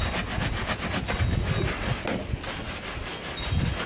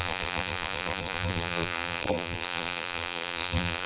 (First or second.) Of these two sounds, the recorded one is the first